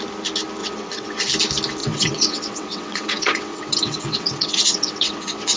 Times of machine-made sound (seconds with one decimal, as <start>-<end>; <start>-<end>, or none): 0.6-1.2; 1.8-5.6